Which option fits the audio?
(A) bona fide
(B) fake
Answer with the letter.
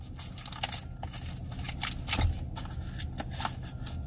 A